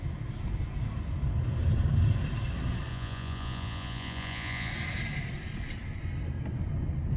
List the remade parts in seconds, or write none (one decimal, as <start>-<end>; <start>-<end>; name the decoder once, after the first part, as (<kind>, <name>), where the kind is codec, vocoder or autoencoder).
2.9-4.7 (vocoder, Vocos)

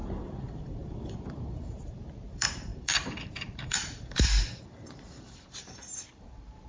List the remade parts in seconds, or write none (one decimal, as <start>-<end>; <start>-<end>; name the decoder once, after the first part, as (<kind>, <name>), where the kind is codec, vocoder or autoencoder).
0.0-6.7 (vocoder, BigVGAN v2)

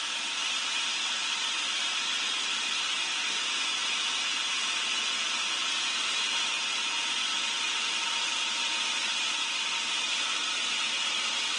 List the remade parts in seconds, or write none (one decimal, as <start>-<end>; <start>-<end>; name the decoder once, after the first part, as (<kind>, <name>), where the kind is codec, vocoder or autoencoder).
none